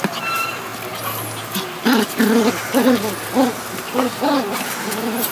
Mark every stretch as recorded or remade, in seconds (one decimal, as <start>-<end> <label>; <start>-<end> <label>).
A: 0.0-5.3 recorded